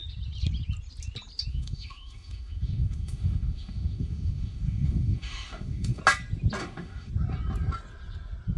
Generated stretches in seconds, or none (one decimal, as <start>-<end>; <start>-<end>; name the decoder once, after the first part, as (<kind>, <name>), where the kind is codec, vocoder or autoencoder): 1.5-6.0 (autoencoder, DAC-VAE); 6.6-7.1

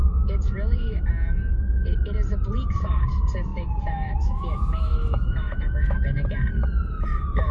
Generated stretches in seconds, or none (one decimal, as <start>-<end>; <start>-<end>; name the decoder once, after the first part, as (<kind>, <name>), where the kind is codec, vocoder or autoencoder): 0.0-1.1 (autoencoder, DAC-VAE); 3.5-6.0